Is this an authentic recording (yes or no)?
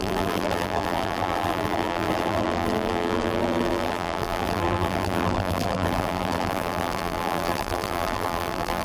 no